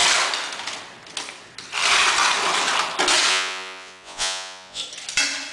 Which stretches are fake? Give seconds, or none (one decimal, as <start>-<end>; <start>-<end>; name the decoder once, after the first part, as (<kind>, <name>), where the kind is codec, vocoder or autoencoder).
3.3-4.8 (vocoder, Vocos)

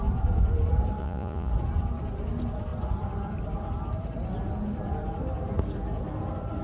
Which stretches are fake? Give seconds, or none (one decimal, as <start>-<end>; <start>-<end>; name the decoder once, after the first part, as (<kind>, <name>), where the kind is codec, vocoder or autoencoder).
1.0-1.5 (vocoder, Vocos)

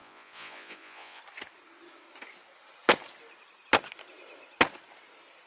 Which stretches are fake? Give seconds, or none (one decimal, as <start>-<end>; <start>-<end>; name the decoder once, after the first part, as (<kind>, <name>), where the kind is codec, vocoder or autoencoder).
0.0-1.2 (vocoder, Vocos)

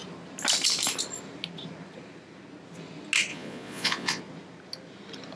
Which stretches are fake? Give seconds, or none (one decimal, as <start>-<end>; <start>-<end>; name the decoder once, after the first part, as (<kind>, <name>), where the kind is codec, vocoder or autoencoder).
3.3-4.2 (vocoder, Vocos)

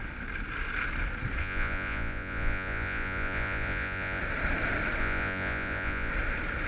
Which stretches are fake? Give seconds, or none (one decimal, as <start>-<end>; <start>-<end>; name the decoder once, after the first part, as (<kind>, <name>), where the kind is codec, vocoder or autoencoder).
1.4-4.2 (vocoder, Vocos); 5.0-6.1